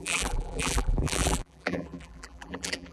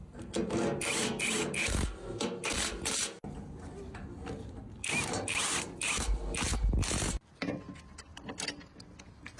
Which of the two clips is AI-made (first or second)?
first